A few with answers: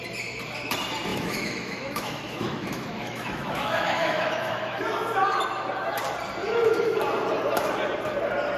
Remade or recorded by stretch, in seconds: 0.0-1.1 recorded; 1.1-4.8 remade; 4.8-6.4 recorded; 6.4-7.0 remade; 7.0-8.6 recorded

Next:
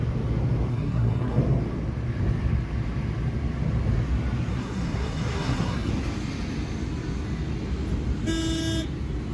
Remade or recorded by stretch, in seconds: 0.0-0.7 recorded; 0.7-1.4 remade; 1.4-4.5 recorded; 4.5-5.9 remade; 5.9-9.3 recorded